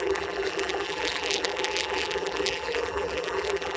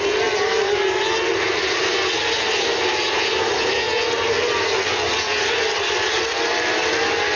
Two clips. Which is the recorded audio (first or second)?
second